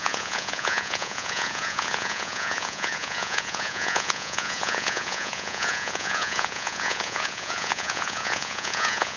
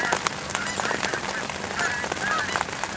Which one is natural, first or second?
second